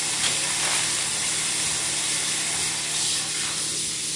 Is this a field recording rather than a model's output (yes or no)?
yes